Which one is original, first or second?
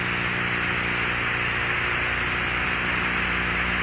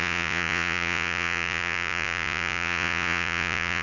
first